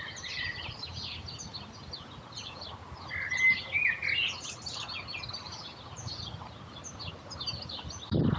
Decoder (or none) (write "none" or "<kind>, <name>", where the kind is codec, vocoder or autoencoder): none